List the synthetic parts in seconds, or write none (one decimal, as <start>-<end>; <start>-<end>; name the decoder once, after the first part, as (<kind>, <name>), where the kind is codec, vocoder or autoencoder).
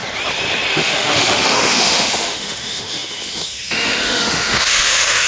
0.7-5.3 (autoencoder, DAC-VAE)